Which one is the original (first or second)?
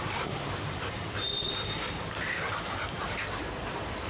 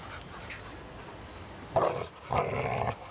second